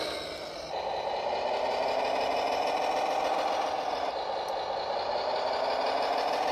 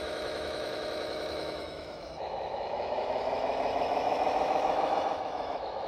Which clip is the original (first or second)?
first